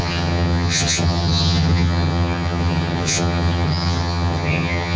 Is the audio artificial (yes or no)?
yes